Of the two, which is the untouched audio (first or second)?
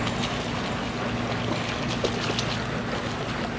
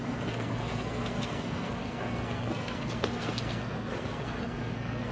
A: first